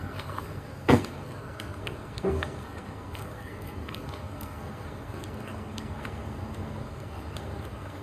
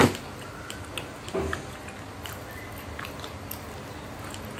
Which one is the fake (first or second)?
first